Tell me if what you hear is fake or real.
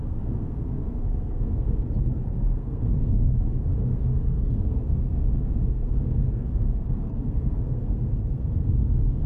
fake